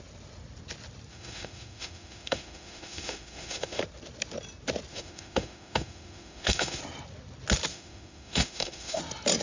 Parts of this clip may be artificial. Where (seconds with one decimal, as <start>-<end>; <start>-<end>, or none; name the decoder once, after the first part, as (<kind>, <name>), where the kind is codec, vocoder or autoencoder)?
1.1-3.8 (autoencoder, DAC-VAE); 4.9-6.8; 7.7-9.0